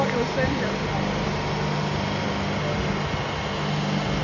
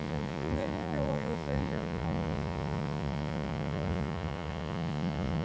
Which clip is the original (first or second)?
first